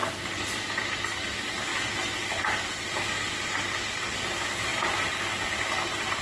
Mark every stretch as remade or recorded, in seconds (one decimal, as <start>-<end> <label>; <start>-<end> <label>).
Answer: 0.0-6.2 recorded